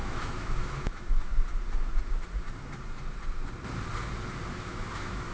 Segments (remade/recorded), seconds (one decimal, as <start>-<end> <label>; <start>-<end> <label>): 0.0-1.3 remade; 1.3-4.5 recorded; 4.5-5.3 remade